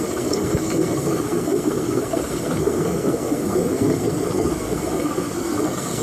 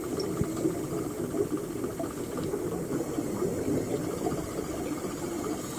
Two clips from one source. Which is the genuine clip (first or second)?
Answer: second